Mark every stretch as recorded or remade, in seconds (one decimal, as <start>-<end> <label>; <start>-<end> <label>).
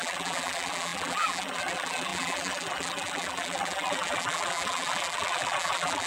0.0-6.1 remade